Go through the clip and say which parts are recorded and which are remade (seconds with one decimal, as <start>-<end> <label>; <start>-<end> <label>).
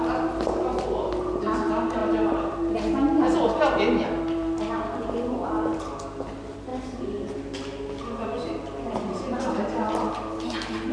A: 0.0-10.9 recorded